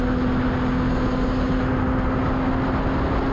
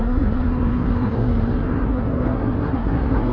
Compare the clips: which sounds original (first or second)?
first